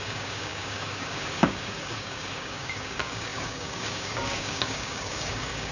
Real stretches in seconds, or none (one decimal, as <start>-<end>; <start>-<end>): none